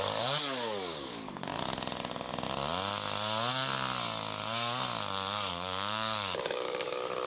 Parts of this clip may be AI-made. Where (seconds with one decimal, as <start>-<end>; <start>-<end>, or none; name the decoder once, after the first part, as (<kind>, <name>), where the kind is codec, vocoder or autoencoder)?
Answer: 0.0-1.5 (codec, DAC); 5.5-7.3